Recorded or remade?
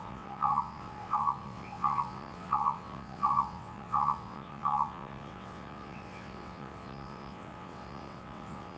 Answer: remade